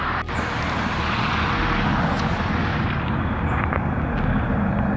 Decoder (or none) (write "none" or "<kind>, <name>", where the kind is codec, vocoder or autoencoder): none